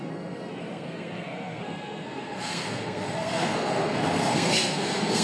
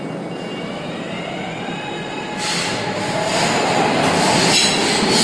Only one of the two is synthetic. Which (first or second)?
first